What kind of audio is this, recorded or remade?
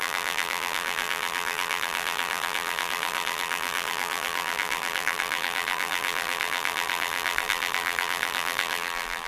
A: remade